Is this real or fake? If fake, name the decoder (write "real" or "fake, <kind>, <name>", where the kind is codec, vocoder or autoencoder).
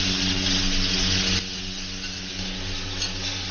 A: real